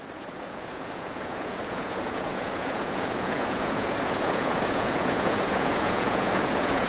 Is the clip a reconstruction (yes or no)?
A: yes